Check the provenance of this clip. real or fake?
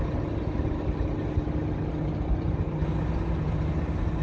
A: real